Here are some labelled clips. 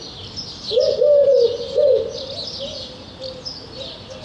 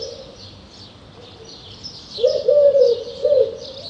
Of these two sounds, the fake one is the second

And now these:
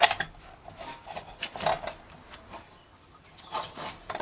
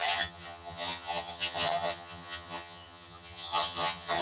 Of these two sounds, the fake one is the second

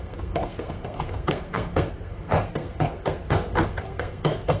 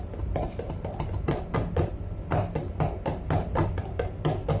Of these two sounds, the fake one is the first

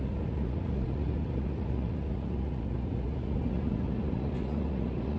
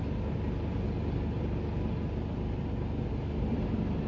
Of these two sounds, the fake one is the first